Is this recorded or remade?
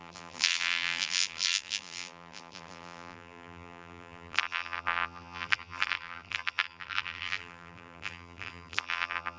remade